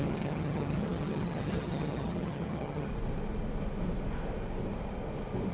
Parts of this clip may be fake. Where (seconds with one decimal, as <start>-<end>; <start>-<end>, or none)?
0.0-2.9